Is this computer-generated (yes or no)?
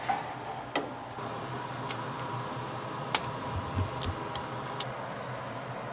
no